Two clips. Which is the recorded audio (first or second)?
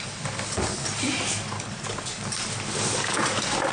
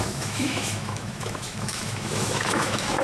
first